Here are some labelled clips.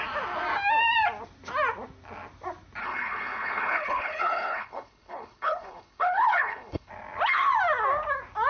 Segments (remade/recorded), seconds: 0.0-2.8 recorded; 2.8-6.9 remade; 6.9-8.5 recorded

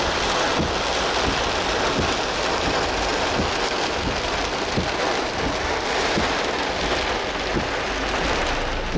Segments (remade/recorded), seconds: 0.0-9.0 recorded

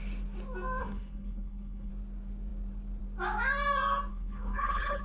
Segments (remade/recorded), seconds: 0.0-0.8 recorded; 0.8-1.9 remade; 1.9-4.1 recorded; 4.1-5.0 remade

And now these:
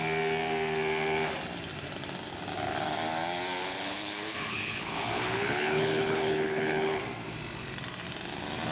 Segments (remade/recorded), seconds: 0.0-3.6 recorded; 3.6-7.0 remade; 7.0-8.7 recorded

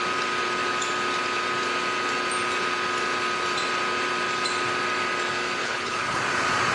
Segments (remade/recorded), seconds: 0.0-5.6 recorded; 5.6-6.2 remade; 6.2-6.7 recorded

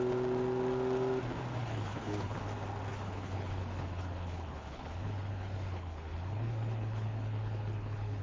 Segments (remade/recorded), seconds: 0.0-1.6 recorded; 1.6-2.4 remade; 2.4-2.9 recorded; 2.9-8.2 remade